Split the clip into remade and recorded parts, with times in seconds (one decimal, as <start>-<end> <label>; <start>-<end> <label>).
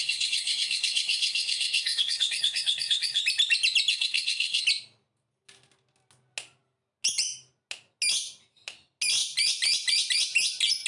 0.0-3.2 remade; 3.2-3.9 recorded; 3.9-4.6 remade; 4.6-10.9 recorded